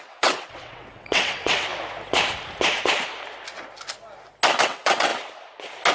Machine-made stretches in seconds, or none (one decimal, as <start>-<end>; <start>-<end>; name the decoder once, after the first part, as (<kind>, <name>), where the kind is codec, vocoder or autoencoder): 0.0-1.7 (vocoder, WaveNeXt); 4.6-5.1